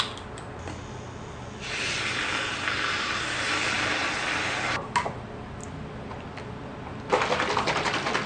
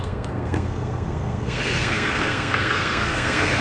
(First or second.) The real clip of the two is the first